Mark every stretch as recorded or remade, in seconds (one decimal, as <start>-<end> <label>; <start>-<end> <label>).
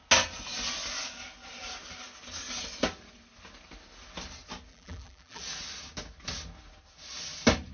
0.0-4.7 recorded; 4.7-5.4 remade; 5.4-7.7 recorded